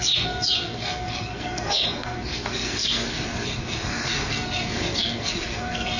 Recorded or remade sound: remade